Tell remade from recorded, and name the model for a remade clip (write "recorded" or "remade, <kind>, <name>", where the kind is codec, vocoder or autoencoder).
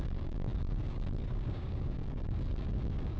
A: remade, codec, DAC